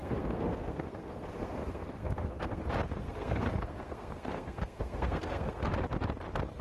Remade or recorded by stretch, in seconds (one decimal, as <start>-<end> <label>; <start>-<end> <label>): 0.0-2.6 remade; 2.6-3.0 recorded; 3.0-5.7 remade; 5.7-6.6 recorded